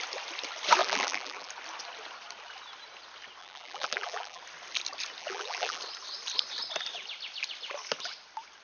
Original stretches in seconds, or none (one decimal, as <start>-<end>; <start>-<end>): 0.0-0.8; 1.5-3.4; 4.4-5.2; 5.8-8.6